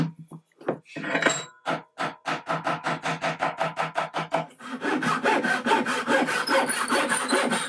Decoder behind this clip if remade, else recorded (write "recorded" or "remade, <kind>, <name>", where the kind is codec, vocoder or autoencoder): recorded